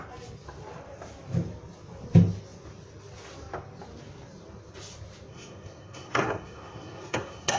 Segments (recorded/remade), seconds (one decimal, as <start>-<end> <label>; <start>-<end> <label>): 0.0-5.3 recorded; 5.3-7.6 remade

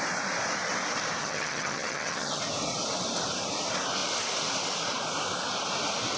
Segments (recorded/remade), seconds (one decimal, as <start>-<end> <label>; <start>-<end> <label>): 0.0-1.2 recorded; 1.2-2.4 remade; 2.4-6.2 recorded

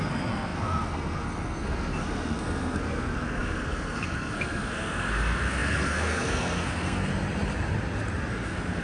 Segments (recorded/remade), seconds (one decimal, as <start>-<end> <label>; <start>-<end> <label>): 0.0-7.1 remade; 7.1-8.3 recorded; 8.3-8.8 remade

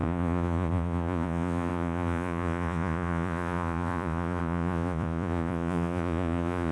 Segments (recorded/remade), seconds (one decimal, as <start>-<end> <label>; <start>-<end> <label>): 0.0-6.7 remade

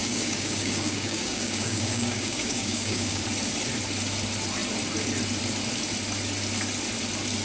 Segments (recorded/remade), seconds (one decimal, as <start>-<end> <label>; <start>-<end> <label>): 0.0-3.2 remade; 3.2-7.4 recorded

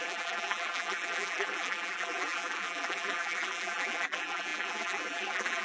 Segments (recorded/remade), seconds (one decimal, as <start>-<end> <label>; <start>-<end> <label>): 0.0-5.6 remade